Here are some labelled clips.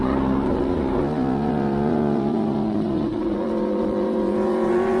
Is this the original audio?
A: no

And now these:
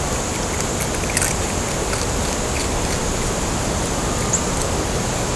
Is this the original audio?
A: yes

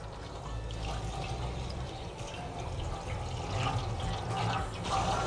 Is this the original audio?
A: yes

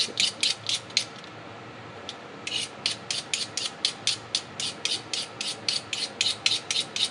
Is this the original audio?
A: yes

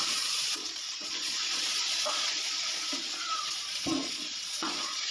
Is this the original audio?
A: no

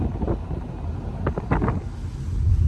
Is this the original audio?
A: yes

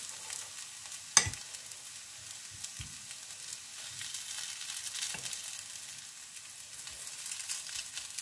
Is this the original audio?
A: yes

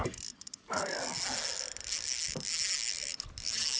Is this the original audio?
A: yes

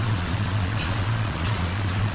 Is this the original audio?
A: no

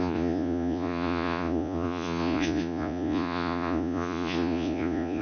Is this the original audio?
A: no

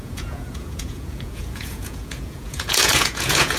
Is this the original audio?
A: no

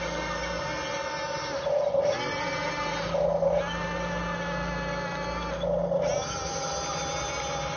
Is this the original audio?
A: yes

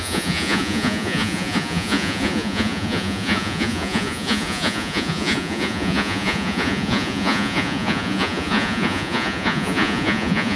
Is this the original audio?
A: no